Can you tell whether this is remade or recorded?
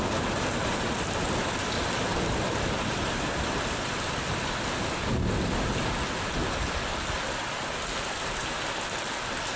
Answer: recorded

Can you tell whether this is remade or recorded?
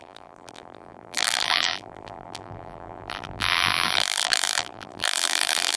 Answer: remade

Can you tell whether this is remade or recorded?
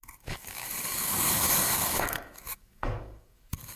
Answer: remade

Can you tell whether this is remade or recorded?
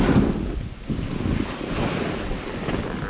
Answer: recorded